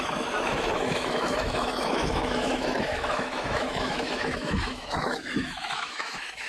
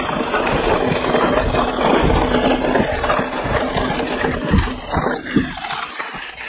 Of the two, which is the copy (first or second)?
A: first